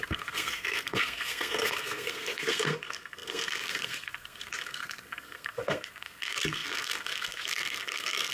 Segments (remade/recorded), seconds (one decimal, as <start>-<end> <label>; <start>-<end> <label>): 0.0-8.3 remade